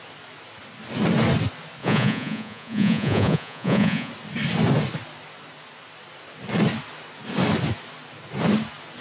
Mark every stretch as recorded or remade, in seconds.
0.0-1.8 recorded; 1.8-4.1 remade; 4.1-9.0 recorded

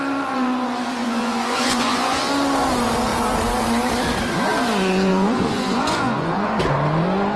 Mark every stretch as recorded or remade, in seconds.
0.0-1.0 recorded; 1.0-2.2 remade; 2.2-5.1 recorded; 5.1-6.5 remade; 6.5-7.4 recorded

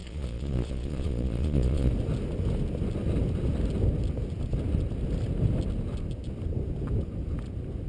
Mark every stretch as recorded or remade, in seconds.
0.0-1.9 remade; 1.9-7.9 recorded

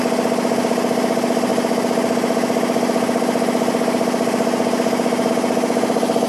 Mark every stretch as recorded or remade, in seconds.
0.0-6.3 recorded

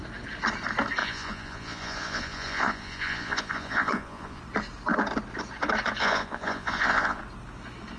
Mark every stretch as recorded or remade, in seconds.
0.0-1.0 recorded; 1.0-4.4 remade; 4.4-6.0 recorded; 6.0-7.2 remade; 7.2-8.0 recorded

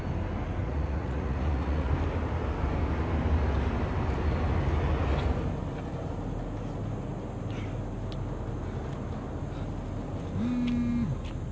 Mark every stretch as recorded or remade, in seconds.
0.0-0.6 recorded; 0.6-1.9 remade; 1.9-11.5 recorded